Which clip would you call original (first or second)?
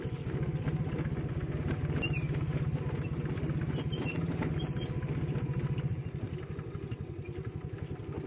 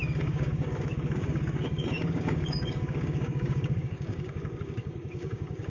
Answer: first